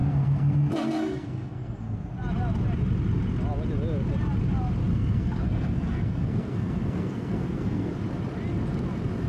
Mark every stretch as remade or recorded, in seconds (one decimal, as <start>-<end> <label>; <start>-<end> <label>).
0.0-2.1 remade; 2.1-4.9 recorded; 4.9-7.9 remade; 7.9-9.3 recorded